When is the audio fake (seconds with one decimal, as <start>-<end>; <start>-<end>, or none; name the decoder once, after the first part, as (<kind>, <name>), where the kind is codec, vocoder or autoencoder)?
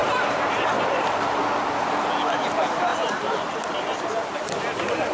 0.0-1.4 (vocoder, BigVGAN v2); 2.9-3.6